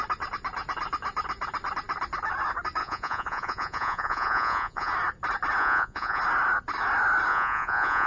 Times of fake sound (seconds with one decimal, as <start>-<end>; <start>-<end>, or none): 2.8-4.9; 5.6-6.2; 7.3-8.1